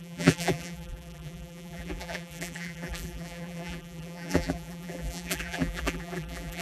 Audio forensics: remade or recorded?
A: remade